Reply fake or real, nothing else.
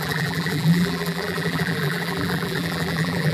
fake